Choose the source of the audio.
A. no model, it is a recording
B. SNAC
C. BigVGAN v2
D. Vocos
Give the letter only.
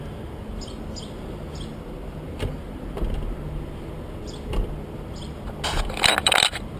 A